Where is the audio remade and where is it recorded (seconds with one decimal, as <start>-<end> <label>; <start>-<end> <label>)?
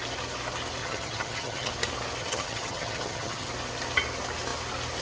0.0-0.8 recorded; 0.8-1.7 remade; 1.7-2.2 recorded; 2.2-3.5 remade; 3.5-5.0 recorded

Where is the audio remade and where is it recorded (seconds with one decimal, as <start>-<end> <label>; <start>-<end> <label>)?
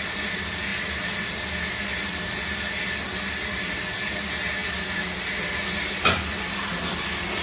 0.0-7.4 recorded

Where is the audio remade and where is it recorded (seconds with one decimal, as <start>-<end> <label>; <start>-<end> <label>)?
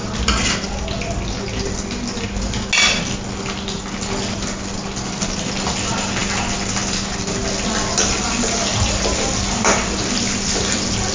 0.0-11.1 recorded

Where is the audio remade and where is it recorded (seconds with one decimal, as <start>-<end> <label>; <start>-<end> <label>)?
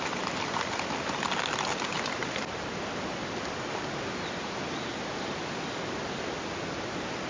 0.0-7.3 recorded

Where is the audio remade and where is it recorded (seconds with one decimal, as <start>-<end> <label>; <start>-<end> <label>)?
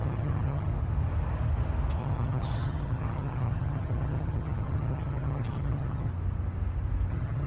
0.0-0.7 remade; 0.7-2.0 recorded; 2.0-6.1 remade; 6.1-7.1 recorded; 7.1-7.5 remade